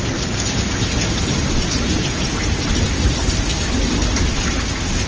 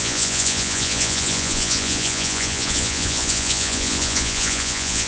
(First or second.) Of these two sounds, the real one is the first